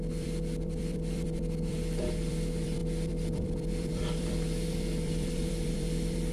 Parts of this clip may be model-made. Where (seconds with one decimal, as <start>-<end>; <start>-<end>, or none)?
0.0-6.3